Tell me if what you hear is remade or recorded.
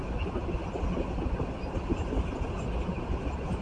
recorded